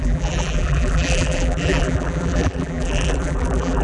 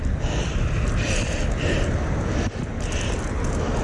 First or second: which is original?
second